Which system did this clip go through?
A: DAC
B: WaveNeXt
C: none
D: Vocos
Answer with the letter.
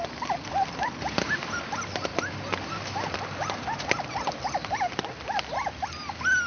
C